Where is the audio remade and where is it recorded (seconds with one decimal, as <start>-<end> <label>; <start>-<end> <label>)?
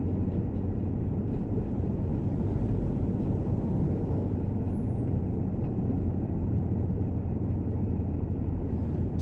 0.0-9.2 recorded